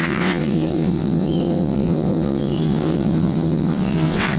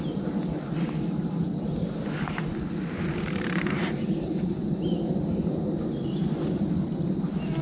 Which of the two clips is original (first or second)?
second